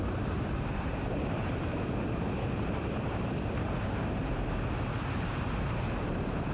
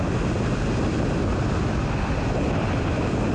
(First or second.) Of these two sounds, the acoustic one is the second